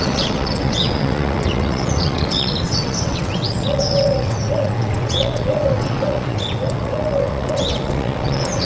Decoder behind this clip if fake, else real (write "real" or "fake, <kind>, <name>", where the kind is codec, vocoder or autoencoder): fake, vocoder, WaveNeXt